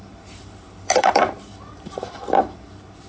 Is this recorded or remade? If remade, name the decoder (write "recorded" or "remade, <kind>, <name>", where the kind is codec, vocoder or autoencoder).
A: remade, vocoder, BigVGAN v2